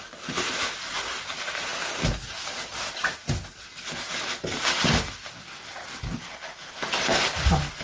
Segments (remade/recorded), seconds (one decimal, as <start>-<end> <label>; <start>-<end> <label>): 0.0-7.8 recorded